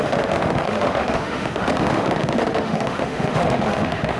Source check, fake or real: fake